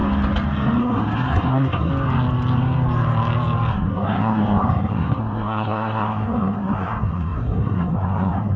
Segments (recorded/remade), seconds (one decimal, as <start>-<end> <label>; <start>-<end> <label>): 0.0-0.8 recorded; 0.8-1.9 remade; 1.9-3.7 recorded; 3.7-8.6 remade